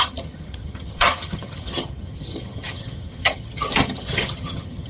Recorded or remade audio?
remade